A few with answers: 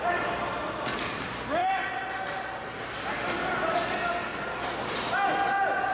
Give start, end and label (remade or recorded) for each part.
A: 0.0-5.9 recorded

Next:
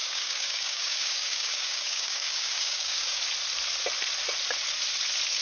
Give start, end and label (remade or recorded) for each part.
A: 0.0-3.2 remade; 3.2-5.4 recorded

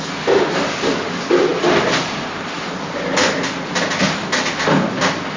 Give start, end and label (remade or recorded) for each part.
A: 0.0-5.4 recorded

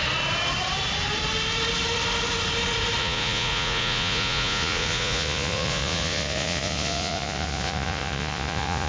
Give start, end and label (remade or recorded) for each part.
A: 0.0-3.0 recorded; 3.0-8.9 remade

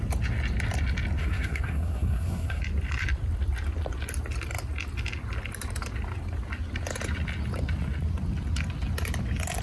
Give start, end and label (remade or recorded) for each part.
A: 0.0-1.2 recorded; 1.2-2.6 remade; 2.6-9.6 recorded

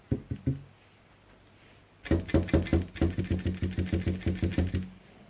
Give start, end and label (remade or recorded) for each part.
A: 0.0-5.3 recorded